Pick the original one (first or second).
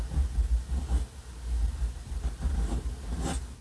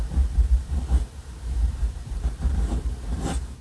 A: first